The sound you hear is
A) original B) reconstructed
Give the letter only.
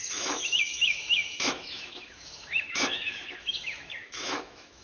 B